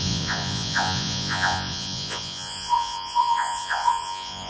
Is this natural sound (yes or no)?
no